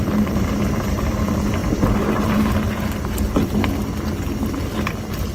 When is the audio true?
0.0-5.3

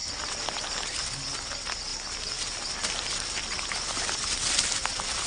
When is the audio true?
0.7-1.9; 4.0-5.3